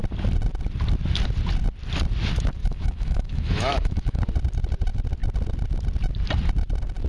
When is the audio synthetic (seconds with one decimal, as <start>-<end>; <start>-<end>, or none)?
2.6-4.2